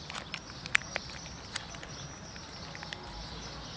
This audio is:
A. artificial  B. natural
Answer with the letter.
B